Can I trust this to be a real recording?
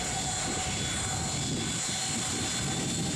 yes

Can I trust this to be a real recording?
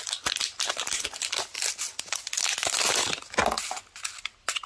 yes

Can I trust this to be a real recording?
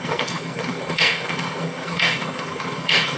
no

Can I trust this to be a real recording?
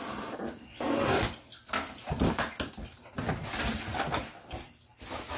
yes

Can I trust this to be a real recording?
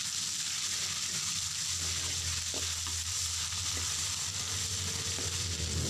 yes